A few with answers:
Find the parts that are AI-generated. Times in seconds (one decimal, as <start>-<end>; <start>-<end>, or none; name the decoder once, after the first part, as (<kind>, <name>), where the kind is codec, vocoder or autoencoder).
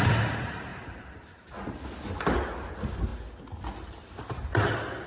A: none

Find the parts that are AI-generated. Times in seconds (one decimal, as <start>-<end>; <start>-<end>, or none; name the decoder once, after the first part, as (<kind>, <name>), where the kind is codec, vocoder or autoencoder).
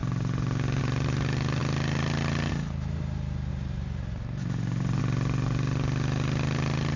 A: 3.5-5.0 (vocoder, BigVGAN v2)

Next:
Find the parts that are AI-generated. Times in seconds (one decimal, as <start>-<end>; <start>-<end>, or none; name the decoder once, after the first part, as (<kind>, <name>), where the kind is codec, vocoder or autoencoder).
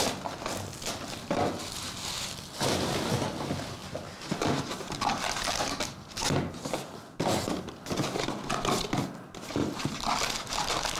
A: 9.6-10.3 (vocoder, BigVGAN v2)